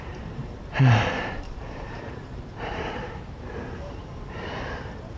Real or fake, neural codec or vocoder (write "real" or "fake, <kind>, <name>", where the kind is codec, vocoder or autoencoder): fake, vocoder, BigVGAN v2